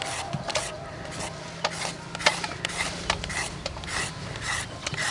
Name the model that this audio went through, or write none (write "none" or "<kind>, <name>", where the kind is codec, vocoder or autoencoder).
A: none